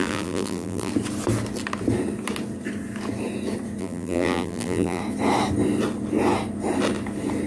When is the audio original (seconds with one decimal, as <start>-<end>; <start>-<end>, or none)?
0.9-3.8; 5.0-7.5